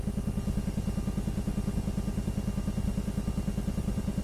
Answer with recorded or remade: recorded